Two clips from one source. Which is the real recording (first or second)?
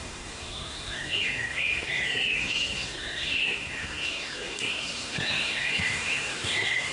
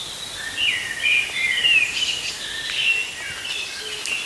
second